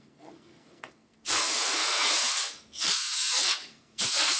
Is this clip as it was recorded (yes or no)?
no